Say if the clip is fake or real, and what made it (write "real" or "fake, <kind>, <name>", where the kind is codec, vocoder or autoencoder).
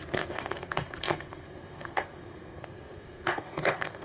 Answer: fake, codec, SNAC